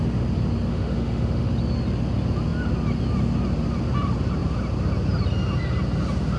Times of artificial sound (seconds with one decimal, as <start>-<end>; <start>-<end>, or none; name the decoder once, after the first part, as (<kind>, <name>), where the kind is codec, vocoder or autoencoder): 0.7-1.5 (autoencoder, DAC-VAE)